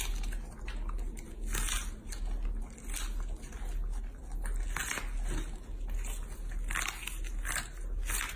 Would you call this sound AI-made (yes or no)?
no